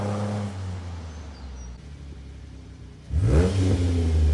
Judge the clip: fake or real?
real